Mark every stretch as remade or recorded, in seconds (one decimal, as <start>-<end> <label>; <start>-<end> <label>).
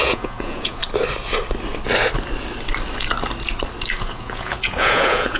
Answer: 0.0-0.8 remade; 0.8-4.0 recorded; 4.0-5.4 remade